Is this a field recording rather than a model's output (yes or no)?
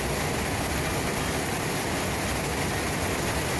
yes